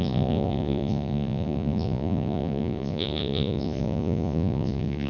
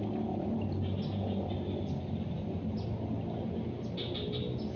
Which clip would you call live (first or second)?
second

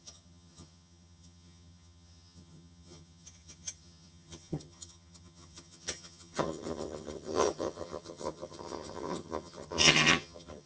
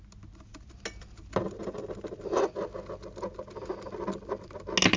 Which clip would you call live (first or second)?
second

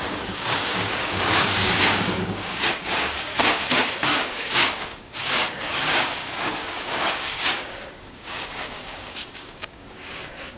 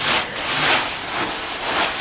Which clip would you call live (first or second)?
second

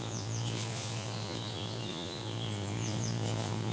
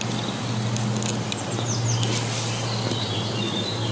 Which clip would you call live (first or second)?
second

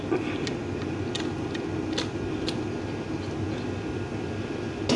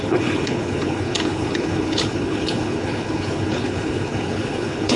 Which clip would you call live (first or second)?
first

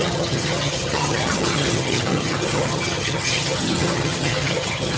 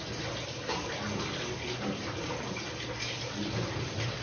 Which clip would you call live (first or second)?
second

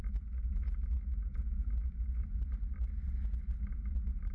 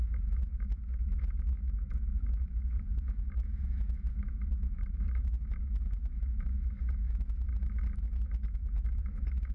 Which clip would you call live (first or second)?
first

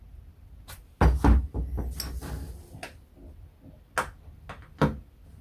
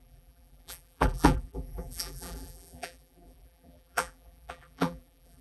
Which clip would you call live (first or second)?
first